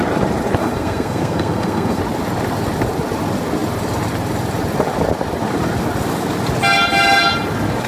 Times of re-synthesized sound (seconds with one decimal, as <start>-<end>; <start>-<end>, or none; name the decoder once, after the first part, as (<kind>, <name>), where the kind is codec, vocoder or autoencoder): 0.6-2.0 (codec, SNAC)